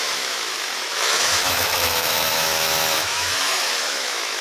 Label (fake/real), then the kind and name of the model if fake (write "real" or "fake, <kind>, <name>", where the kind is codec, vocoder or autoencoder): fake, autoencoder, DAC-VAE